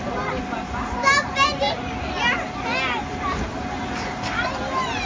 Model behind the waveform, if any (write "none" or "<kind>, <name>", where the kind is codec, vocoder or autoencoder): none